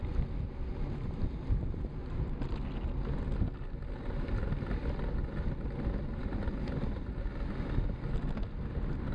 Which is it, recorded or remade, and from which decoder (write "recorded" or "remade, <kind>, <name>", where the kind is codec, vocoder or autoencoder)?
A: recorded